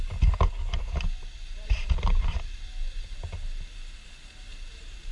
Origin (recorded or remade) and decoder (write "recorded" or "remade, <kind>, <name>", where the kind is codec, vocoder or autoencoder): recorded